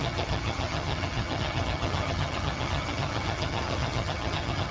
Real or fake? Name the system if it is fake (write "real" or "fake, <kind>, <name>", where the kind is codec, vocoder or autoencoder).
fake, vocoder, HiFi-GAN